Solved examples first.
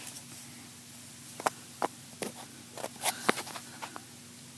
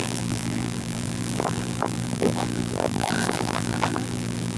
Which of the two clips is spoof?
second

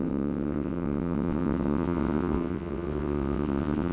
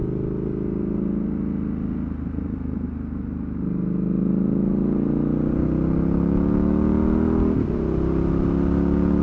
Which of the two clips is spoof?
first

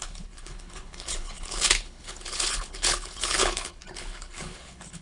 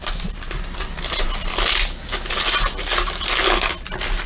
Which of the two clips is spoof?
first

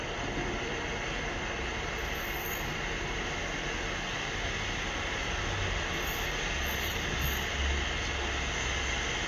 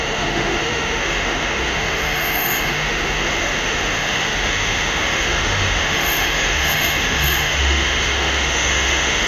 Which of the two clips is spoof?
second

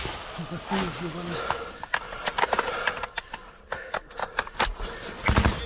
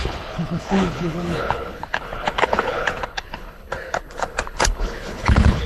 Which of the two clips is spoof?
second